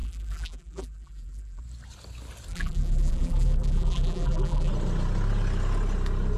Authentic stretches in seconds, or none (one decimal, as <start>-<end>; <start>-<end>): 1.6-2.5; 4.7-6.4